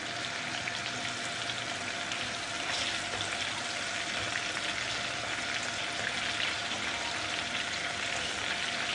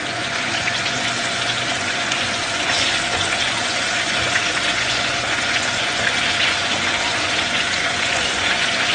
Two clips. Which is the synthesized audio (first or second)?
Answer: second